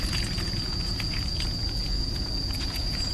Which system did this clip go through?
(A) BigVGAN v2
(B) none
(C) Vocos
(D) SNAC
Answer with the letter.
C